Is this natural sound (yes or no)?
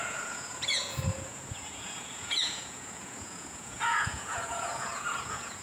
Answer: no